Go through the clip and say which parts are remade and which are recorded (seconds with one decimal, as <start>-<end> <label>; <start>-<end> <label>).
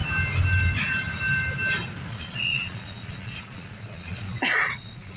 0.0-2.1 recorded; 2.1-5.2 remade